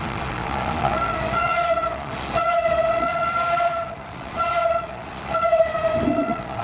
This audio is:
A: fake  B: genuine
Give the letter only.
A